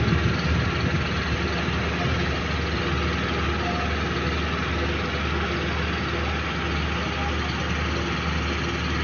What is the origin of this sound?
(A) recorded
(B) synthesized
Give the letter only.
A